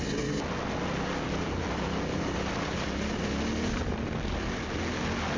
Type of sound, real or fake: real